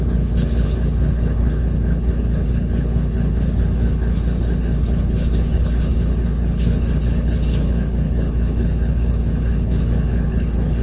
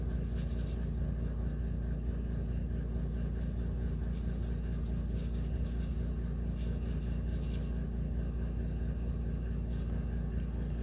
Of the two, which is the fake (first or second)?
first